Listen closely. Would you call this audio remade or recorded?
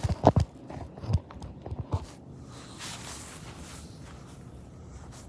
recorded